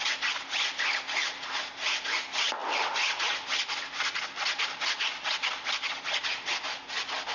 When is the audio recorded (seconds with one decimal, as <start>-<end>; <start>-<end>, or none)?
0.0-7.3